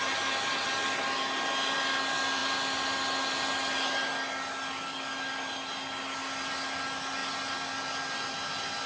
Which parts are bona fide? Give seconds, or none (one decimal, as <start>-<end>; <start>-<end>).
0.0-7.2; 8.3-8.9